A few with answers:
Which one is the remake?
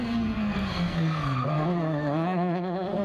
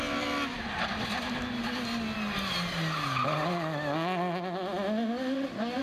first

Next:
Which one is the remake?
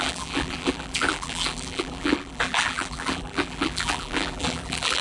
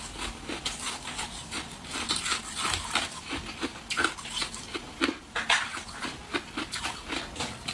first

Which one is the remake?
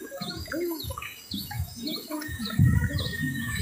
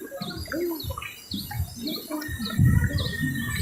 first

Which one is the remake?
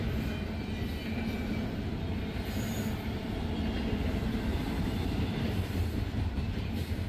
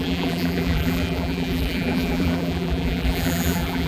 second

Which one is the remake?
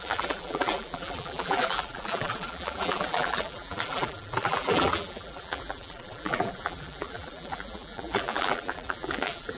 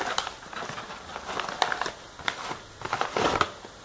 first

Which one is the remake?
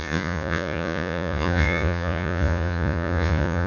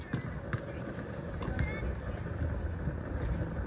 first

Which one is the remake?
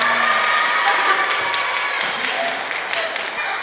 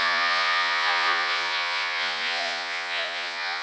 second